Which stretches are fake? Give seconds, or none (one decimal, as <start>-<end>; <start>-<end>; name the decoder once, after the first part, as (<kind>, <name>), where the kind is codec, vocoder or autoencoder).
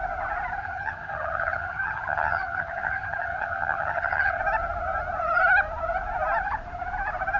0.6-4.4 (vocoder, HiFi-GAN)